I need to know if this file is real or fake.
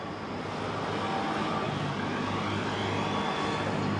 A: real